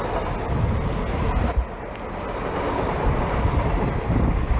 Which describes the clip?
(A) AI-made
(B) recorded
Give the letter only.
B